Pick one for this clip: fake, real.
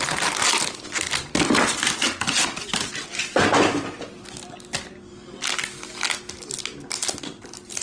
real